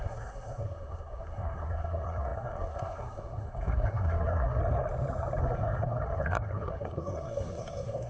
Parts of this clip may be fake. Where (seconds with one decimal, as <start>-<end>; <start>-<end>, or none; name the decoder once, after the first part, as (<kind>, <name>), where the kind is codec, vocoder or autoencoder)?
0.0-4.6 (codec, SNAC); 5.4-8.1